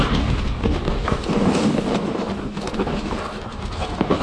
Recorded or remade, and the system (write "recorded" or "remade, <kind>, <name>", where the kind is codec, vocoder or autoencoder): remade, codec, DAC